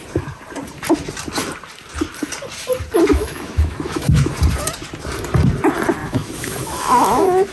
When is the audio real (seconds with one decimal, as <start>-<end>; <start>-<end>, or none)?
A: 0.0-3.1; 4.3-6.0